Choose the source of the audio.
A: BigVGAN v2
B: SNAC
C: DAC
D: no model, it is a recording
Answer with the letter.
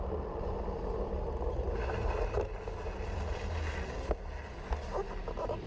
D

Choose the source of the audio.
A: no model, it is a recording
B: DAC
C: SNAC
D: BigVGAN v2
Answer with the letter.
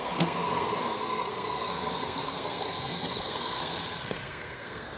C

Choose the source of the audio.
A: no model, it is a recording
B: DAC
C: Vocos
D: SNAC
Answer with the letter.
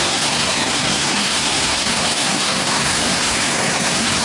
D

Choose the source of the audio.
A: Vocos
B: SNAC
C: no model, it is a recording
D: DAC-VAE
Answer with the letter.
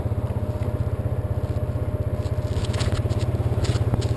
C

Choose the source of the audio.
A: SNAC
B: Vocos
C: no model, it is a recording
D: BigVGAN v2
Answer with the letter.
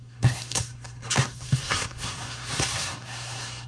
A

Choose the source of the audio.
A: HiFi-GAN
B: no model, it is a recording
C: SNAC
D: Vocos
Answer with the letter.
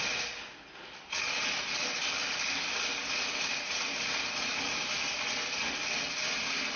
B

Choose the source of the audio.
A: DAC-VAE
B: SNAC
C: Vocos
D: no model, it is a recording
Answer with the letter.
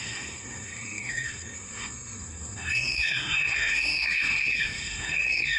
B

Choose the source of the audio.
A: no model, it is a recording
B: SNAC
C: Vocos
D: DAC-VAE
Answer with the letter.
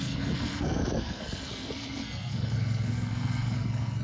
B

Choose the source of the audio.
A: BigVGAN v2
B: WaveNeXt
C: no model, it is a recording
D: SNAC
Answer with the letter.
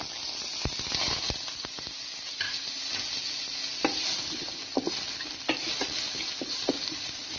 C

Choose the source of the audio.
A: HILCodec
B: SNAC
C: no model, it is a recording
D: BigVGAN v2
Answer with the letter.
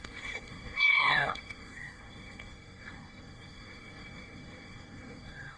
B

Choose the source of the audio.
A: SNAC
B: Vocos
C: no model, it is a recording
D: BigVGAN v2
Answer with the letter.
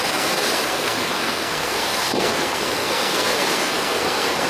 A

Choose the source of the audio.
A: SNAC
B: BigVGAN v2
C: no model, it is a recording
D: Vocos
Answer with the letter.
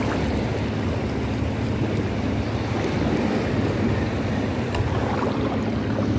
C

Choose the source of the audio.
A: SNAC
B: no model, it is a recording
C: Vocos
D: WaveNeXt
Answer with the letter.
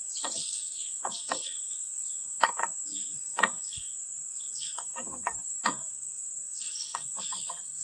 A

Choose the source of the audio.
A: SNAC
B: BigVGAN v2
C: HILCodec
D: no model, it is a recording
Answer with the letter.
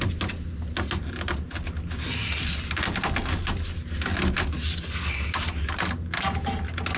D